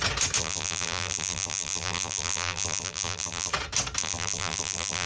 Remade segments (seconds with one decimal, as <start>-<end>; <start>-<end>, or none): 0.4-3.5; 4.0-5.1